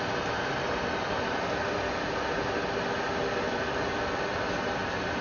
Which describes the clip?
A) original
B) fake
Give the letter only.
A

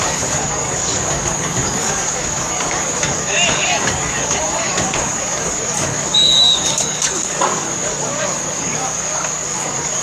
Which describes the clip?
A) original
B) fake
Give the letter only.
B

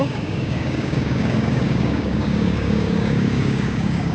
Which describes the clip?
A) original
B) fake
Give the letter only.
B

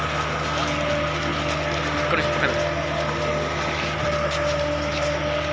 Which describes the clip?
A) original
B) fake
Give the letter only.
A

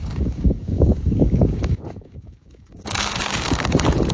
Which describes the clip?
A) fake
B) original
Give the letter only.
A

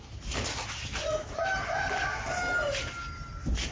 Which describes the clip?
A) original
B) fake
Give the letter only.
A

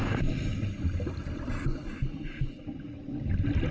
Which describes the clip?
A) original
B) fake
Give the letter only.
A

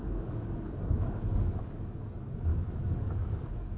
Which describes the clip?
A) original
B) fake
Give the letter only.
B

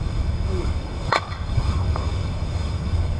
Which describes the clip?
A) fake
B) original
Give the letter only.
A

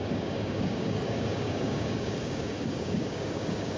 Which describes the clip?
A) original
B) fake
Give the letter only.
B